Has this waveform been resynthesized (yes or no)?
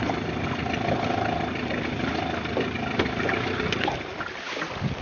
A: no